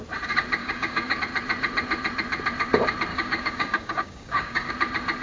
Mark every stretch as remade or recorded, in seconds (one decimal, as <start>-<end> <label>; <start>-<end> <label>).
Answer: 0.0-0.6 recorded; 0.6-1.2 remade; 1.2-3.1 recorded; 3.1-4.7 remade; 4.7-5.2 recorded